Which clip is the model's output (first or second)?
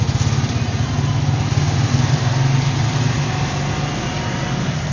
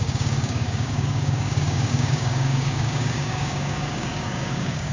second